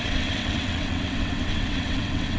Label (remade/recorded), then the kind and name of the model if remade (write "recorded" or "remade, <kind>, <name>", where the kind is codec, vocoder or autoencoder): remade, vocoder, WaveNeXt